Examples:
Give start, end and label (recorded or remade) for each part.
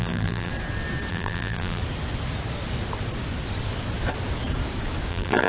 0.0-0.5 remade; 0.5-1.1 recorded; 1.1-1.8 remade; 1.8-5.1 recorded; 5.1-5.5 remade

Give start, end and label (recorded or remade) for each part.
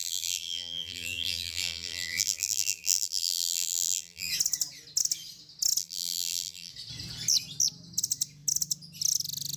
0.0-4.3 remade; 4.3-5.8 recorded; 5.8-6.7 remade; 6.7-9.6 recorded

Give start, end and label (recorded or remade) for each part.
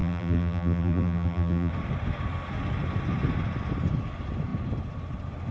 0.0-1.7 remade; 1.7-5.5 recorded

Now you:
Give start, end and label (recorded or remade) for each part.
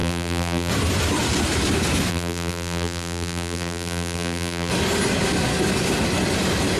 0.0-0.7 remade; 0.7-2.1 recorded; 2.1-4.7 remade; 4.7-6.8 recorded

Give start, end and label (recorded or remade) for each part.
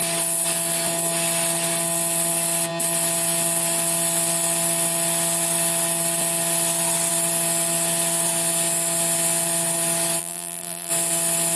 0.0-10.2 recorded; 10.2-10.9 remade; 10.9-11.6 recorded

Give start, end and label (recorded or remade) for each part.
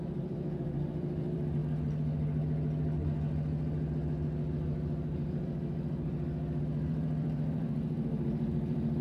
0.0-1.6 remade; 1.6-6.6 recorded; 6.6-9.0 remade